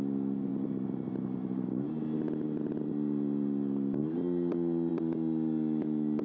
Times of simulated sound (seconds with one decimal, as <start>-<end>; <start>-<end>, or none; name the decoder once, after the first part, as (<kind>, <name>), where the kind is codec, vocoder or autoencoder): none